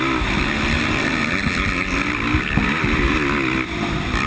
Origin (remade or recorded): recorded